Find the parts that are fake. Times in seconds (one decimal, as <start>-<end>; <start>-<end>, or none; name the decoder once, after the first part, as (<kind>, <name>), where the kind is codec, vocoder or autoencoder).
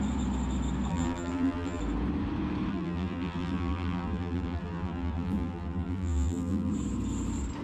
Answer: 0.9-1.8 (vocoder, BigVGAN v2); 2.7-6.7